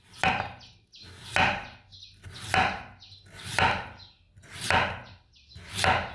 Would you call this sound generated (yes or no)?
no